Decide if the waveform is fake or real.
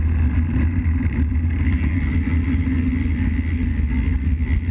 real